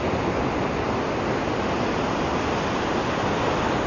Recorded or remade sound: recorded